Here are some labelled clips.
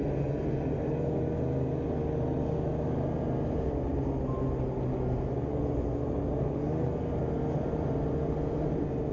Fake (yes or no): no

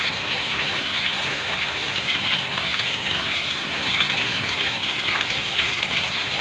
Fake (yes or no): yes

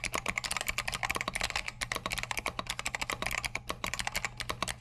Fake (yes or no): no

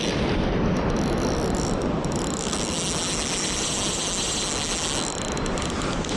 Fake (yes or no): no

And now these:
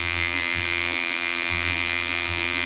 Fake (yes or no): yes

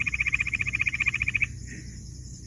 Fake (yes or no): yes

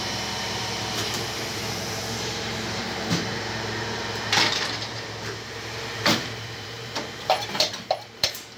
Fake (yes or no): yes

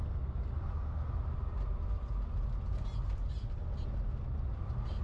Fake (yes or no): no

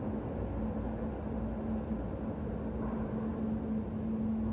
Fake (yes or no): no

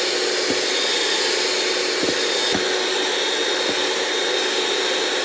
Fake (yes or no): no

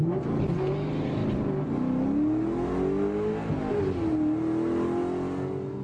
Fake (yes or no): no